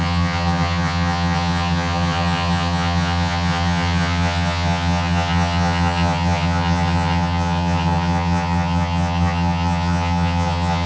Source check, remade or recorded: remade